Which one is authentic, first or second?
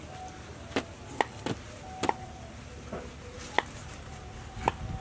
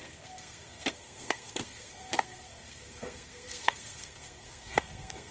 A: first